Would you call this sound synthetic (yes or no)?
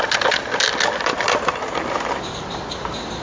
no